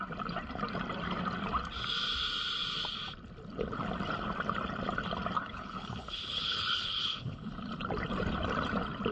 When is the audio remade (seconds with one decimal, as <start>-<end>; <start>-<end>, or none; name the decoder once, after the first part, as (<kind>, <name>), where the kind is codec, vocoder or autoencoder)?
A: 5.4-7.5 (codec, HILCodec)